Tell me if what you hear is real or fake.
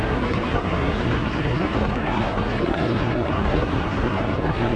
fake